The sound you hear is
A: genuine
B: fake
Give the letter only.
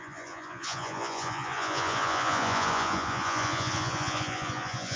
B